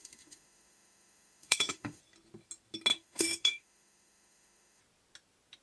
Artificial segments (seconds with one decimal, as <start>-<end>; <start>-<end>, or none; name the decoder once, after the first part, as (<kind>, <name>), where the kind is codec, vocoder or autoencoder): 0.0-2.0 (autoencoder, DAC-VAE); 2.9-4.8